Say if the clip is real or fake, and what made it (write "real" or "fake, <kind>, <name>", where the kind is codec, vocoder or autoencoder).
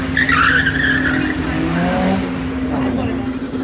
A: real